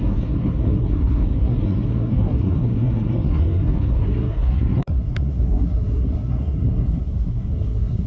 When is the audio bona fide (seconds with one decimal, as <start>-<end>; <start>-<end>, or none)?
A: none